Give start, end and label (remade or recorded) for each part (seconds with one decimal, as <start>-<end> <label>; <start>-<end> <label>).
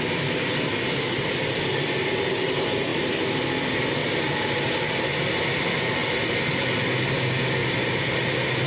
0.0-7.6 recorded; 7.6-8.7 remade